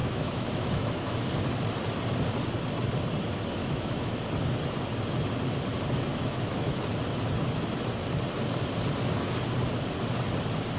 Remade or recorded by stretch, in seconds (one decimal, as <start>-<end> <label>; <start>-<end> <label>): 0.0-1.3 remade; 1.3-3.6 recorded; 3.6-4.2 remade; 4.2-6.1 recorded; 6.1-6.8 remade; 6.8-10.8 recorded